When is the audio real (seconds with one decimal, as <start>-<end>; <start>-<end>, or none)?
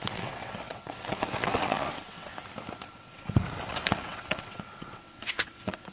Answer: 2.3-2.9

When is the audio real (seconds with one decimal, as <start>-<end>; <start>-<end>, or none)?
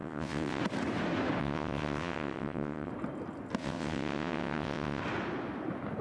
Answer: 0.6-1.4; 2.9-3.6; 5.0-6.0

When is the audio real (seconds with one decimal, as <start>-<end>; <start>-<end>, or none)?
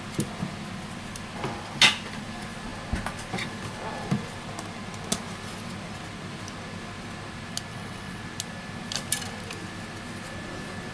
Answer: 0.0-7.7; 8.2-10.9